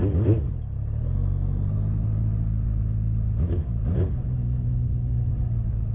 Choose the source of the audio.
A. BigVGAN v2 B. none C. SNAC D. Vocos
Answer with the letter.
B